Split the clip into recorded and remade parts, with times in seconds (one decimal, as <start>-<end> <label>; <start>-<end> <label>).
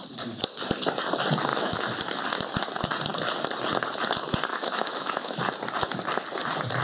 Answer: 0.0-1.5 recorded; 1.5-2.2 remade; 2.2-4.5 recorded; 4.5-5.4 remade; 5.4-6.8 recorded